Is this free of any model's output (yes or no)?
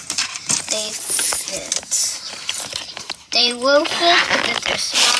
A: no